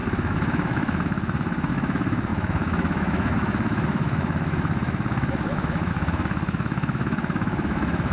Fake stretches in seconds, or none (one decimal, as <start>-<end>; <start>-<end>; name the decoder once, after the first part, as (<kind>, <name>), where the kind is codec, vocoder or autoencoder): 0.0-8.1 (autoencoder, DAC-VAE)